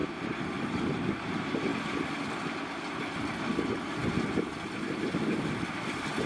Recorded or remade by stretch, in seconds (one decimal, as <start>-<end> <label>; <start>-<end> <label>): 0.0-0.6 recorded; 0.6-1.7 remade; 1.7-4.7 recorded; 4.7-6.3 remade